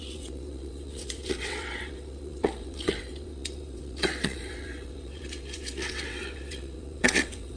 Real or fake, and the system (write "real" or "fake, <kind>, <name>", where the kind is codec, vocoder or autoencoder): fake, vocoder, WaveNeXt